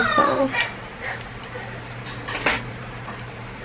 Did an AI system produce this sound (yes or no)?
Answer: no